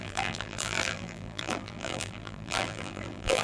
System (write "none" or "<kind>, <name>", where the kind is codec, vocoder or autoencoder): vocoder, BigVGAN v2